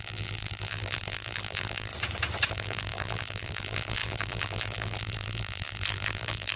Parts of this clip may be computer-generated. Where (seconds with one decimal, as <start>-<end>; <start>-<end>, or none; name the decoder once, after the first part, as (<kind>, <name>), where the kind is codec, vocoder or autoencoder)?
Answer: 0.0-1.9 (vocoder, BigVGAN v2); 2.5-6.6